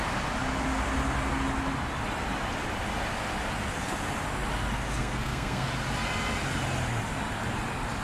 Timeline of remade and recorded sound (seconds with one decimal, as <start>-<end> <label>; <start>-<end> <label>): 0.0-5.0 recorded; 5.0-5.7 remade; 5.7-8.0 recorded